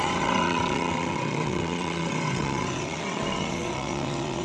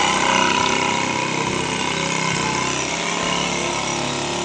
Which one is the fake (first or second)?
first